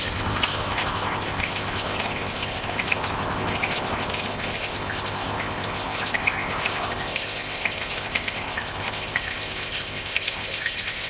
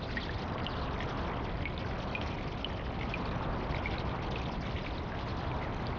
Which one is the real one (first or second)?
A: second